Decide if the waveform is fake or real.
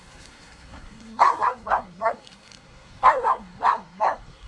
fake